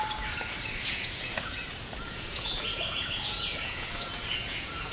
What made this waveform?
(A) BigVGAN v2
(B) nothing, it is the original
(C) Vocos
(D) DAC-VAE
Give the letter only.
C